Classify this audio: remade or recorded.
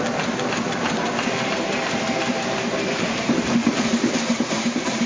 remade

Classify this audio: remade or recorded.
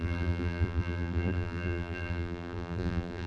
remade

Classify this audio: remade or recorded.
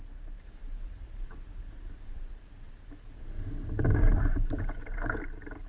remade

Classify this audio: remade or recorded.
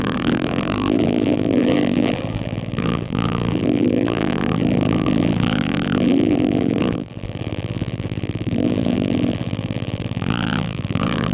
remade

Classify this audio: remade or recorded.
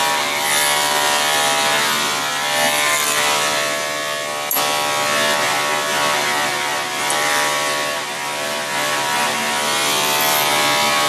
recorded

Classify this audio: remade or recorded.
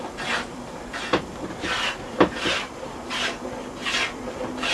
remade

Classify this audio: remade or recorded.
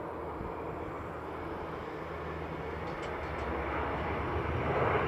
recorded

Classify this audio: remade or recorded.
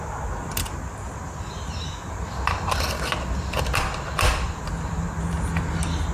recorded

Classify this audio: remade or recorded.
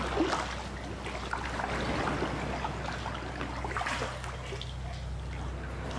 recorded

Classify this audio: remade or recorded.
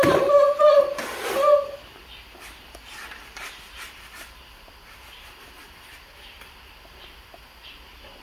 remade